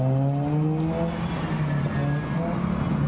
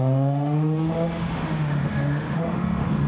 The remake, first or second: second